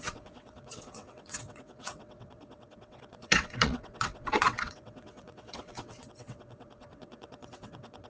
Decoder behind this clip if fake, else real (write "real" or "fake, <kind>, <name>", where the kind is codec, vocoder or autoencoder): fake, vocoder, WaveNeXt